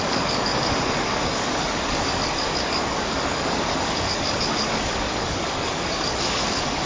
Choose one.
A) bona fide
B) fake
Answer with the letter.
B